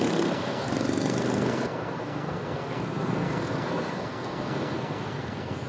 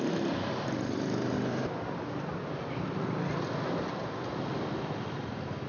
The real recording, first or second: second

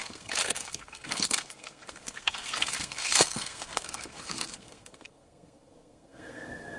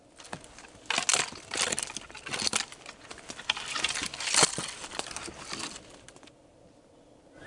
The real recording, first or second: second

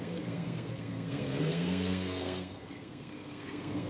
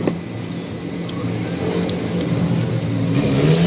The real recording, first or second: second